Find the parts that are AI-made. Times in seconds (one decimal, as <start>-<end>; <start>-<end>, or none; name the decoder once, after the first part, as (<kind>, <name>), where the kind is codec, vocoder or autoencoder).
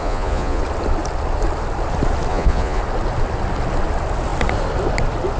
0.0-0.6 (vocoder, Vocos); 2.3-2.8